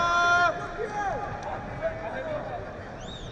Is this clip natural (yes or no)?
yes